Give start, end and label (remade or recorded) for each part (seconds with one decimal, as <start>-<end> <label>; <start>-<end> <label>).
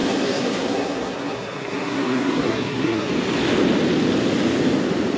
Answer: 0.0-3.1 remade; 3.1-5.2 recorded